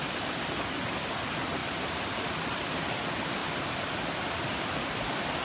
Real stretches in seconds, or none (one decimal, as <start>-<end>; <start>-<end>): 0.0-1.6; 2.6-3.4; 4.9-5.4